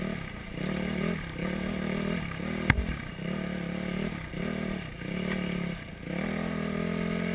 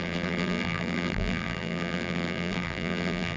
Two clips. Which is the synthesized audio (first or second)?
second